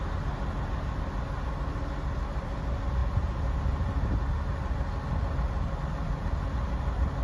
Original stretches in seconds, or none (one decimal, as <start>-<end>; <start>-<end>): 0.0-7.2